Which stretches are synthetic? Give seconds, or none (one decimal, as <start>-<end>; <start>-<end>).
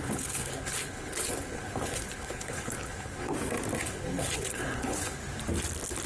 0.0-3.3; 3.8-5.2